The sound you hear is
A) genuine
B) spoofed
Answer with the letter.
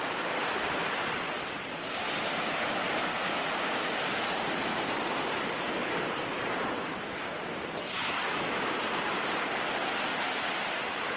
A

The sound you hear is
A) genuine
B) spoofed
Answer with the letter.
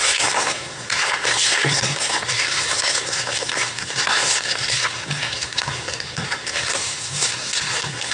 B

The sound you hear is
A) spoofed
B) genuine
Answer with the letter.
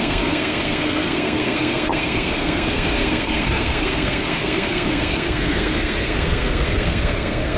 A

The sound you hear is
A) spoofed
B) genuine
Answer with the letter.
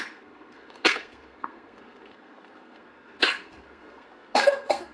A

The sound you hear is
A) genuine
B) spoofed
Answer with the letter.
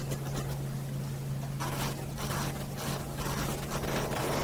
A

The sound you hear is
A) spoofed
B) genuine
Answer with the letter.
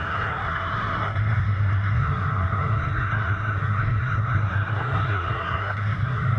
A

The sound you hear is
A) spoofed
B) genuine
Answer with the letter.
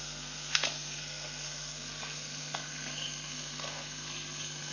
A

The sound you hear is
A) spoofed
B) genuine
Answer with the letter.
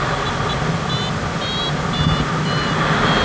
B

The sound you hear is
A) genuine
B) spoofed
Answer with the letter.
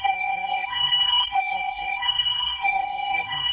B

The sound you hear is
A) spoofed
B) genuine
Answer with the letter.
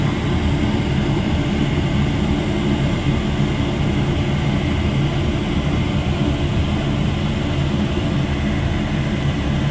B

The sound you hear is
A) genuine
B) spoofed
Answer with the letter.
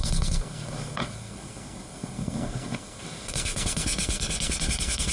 B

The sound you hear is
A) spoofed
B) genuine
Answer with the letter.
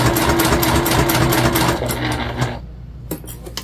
B